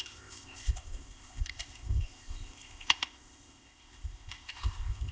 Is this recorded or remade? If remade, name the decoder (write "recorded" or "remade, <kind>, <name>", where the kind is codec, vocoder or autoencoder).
remade, codec, ZipCodec